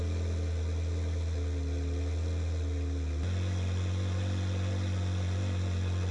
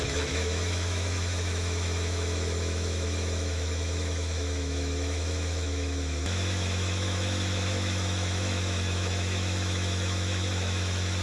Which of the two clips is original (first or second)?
first